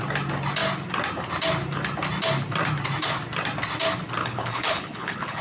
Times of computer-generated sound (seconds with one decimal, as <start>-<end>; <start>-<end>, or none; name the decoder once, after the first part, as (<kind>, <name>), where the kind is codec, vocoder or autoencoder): 4.2-5.4 (codec, HILCodec)